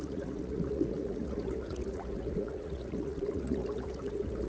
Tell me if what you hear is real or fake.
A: fake